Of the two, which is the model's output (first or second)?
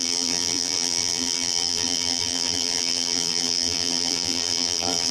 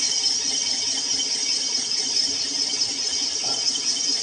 first